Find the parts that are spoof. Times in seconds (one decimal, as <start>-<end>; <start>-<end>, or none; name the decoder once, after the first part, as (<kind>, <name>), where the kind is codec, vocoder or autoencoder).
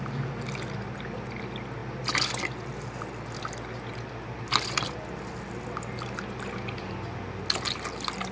none